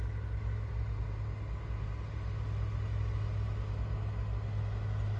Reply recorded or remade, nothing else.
recorded